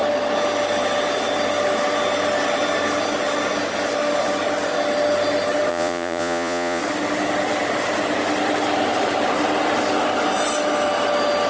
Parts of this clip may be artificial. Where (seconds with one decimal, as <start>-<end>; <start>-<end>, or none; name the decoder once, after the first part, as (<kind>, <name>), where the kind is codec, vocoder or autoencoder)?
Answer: 5.7-6.8 (vocoder, Vocos)